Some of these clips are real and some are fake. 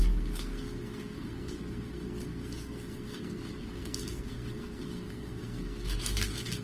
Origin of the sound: fake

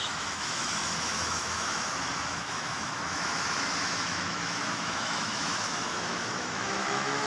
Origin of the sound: fake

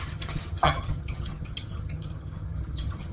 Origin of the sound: fake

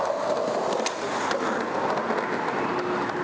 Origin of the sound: real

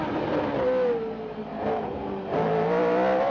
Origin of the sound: real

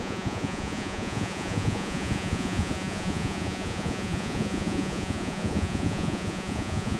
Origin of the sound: fake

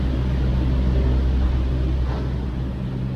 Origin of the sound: real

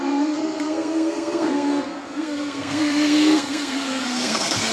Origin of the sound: fake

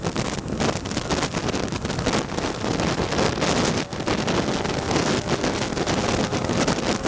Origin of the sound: real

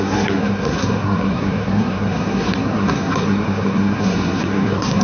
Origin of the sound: fake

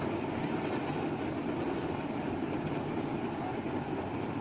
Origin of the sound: fake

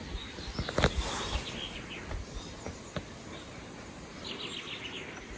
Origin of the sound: real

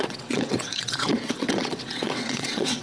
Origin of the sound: fake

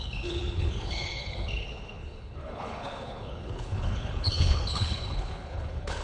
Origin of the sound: fake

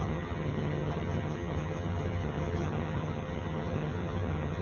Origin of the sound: fake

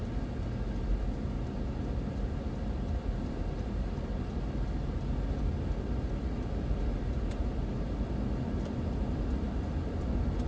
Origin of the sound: real